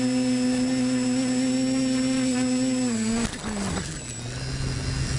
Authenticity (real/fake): real